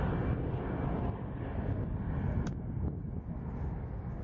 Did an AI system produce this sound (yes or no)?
no